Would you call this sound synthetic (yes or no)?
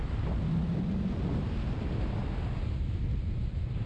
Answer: no